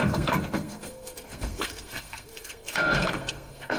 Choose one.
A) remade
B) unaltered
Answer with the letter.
A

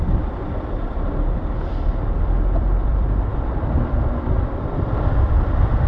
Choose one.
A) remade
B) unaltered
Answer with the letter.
A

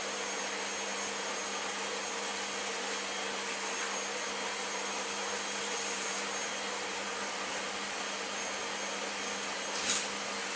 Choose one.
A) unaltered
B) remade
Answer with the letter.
A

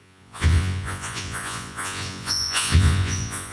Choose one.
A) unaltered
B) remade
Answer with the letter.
B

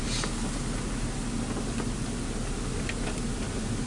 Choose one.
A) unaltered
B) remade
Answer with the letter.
A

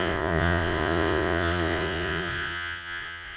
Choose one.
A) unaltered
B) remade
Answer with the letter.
B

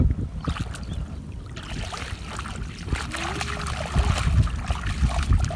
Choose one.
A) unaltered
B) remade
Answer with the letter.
A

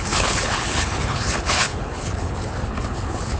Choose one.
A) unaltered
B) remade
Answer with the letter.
B